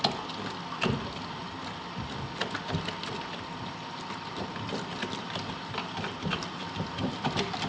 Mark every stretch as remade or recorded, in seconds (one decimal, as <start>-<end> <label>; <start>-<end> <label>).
0.0-7.7 recorded